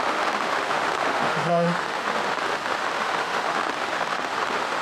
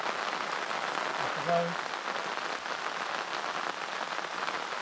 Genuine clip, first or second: second